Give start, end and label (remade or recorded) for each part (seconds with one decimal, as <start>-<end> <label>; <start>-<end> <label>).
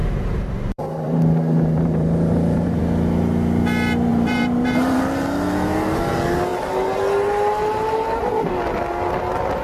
0.0-2.8 remade; 2.8-4.1 recorded; 4.1-5.0 remade; 5.0-9.6 recorded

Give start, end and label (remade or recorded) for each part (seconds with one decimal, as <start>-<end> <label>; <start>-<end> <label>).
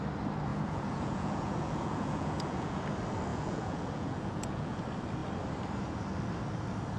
0.0-0.5 recorded; 0.5-2.8 remade; 2.8-3.3 recorded; 3.3-4.8 remade; 4.8-7.0 recorded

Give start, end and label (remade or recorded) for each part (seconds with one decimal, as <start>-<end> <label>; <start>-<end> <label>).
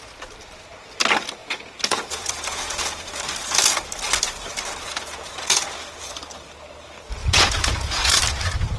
0.0-1.4 recorded; 1.4-3.1 remade; 3.1-4.8 recorded; 4.8-5.6 remade; 5.6-7.2 recorded; 7.2-8.2 remade; 8.2-8.8 recorded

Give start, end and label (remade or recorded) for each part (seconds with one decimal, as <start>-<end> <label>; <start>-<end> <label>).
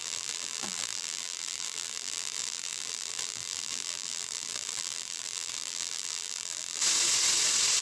0.0-6.8 remade; 6.8-7.8 recorded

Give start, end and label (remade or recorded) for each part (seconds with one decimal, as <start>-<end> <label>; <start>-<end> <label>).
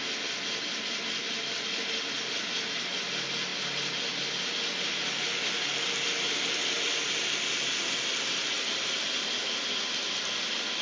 0.0-10.8 recorded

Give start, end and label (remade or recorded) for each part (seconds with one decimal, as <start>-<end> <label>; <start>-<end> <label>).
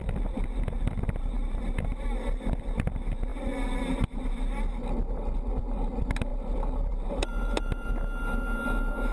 0.0-9.1 recorded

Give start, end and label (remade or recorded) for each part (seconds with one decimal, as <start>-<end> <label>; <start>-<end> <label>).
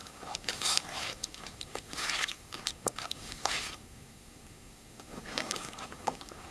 0.0-6.5 remade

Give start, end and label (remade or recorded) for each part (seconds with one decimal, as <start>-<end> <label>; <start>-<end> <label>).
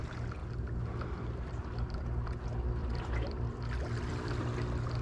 0.0-2.8 recorded; 2.8-4.4 remade; 4.4-5.0 recorded